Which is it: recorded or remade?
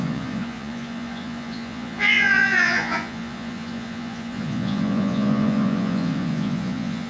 remade